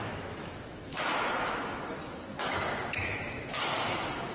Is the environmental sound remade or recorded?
remade